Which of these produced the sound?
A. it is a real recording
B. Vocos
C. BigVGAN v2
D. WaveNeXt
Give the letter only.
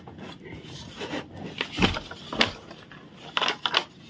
A